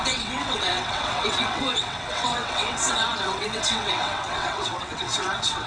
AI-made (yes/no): yes